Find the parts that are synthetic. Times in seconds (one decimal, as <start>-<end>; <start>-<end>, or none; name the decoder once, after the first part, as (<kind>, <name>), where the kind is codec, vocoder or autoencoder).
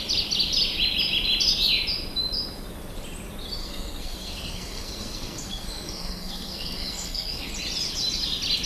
3.6-7.5 (codec, SNAC)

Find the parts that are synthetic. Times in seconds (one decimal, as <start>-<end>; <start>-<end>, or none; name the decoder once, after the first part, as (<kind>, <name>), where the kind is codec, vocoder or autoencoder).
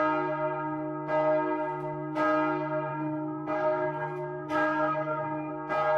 2.9-5.5 (codec, SNAC)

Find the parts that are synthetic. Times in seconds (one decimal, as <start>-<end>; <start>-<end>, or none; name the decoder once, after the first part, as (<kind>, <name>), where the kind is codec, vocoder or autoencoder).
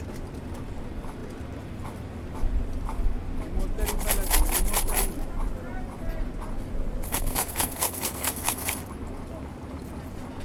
7.1-8.7 (codec, SNAC)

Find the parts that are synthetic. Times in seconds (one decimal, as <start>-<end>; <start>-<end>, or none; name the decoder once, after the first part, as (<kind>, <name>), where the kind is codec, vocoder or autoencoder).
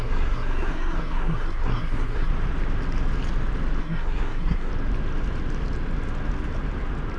0.0-2.3 (codec, SNAC); 3.8-4.7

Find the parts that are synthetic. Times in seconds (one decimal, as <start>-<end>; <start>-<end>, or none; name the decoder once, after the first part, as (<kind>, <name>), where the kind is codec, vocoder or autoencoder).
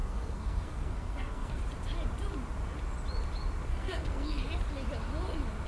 0.0-1.6 (codec, SNAC); 3.7-4.4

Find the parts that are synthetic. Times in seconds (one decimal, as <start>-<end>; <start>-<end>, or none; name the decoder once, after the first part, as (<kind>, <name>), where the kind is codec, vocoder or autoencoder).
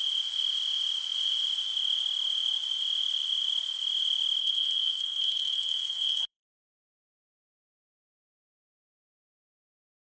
4.4-6.6 (codec, SNAC)